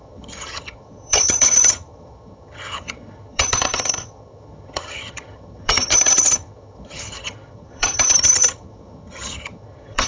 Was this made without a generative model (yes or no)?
no